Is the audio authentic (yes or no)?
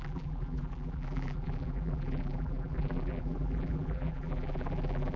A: no